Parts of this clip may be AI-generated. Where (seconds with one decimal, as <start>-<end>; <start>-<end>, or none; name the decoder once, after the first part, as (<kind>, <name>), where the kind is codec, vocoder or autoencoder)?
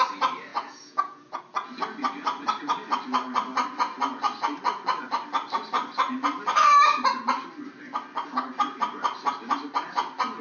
0.5-1.4 (vocoder, Vocos)